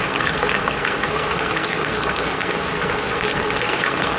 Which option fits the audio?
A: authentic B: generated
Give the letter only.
B